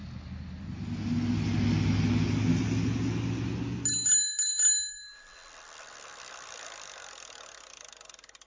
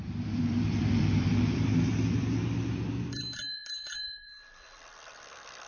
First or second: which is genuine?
first